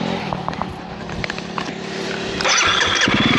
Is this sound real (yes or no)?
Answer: yes